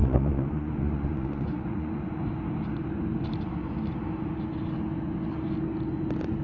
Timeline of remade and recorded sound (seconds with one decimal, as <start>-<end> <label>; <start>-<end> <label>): 0.0-2.2 remade; 2.2-6.4 recorded

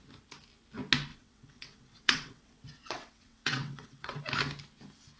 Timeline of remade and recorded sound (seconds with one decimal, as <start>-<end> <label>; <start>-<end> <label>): 0.0-1.1 recorded; 1.1-4.2 remade; 4.2-5.2 recorded

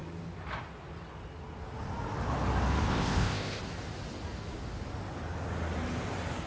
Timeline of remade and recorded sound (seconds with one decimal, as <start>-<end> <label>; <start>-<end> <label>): 0.0-2.9 recorded; 2.9-3.6 remade; 3.6-6.5 recorded

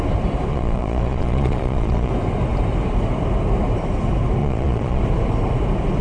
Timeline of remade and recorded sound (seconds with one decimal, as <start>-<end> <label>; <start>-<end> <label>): 0.0-0.5 recorded; 0.5-2.1 remade; 2.1-4.4 recorded; 4.4-5.0 remade; 5.0-6.0 recorded